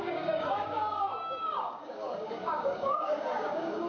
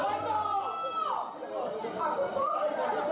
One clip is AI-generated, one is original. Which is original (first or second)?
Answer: second